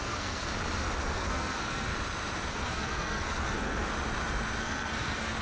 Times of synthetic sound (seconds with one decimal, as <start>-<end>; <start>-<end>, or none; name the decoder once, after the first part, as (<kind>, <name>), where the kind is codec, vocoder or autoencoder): 0.0-0.5 (codec, SNAC); 1.0-1.9; 2.5-3.9; 4.6-5.4